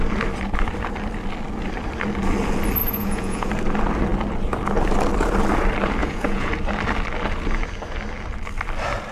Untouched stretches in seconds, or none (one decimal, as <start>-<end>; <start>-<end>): 0.0-2.8; 3.5-6.0; 6.5-9.1